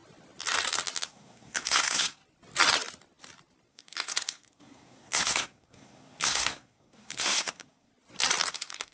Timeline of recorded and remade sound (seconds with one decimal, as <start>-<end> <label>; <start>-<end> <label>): 0.0-1.0 recorded; 1.0-2.2 remade; 2.2-3.7 recorded; 3.7-7.9 remade; 7.9-8.5 recorded; 8.5-8.9 remade